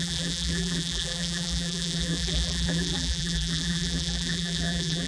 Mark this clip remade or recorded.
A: remade